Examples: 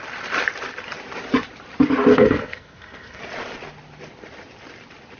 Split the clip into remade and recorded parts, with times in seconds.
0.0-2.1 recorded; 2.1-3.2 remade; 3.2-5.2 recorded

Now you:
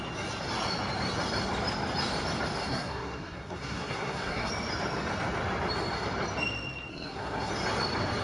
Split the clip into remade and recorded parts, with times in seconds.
0.0-2.6 recorded; 2.6-4.5 remade; 4.5-6.9 recorded; 6.9-7.5 remade; 7.5-8.2 recorded

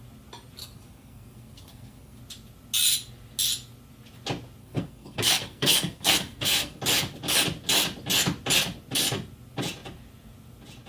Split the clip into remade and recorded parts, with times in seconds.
0.0-0.6 recorded; 0.6-2.2 remade; 2.2-4.6 recorded; 4.6-6.8 remade; 6.8-10.9 recorded

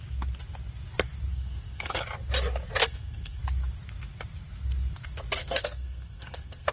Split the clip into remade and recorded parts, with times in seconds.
0.0-1.3 recorded; 1.3-2.0 remade; 2.0-2.8 recorded; 2.8-3.4 remade; 3.4-5.4 recorded; 5.4-6.7 remade

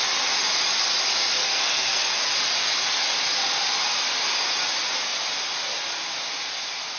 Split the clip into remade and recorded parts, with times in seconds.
0.0-1.4 recorded; 1.4-2.2 remade; 2.2-7.0 recorded